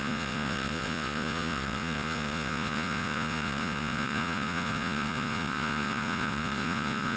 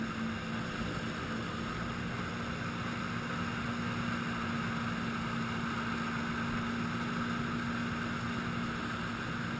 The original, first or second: second